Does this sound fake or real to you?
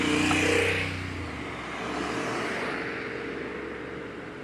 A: real